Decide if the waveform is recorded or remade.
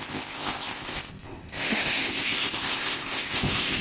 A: remade